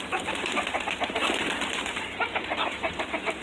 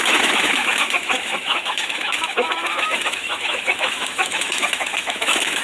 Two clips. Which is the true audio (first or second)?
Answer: first